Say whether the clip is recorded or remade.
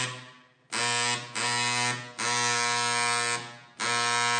recorded